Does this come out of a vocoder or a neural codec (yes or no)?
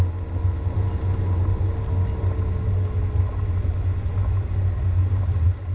no